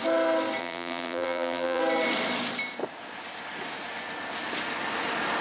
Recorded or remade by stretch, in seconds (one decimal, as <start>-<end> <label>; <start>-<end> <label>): 0.0-0.6 recorded; 0.6-1.8 remade; 1.8-5.4 recorded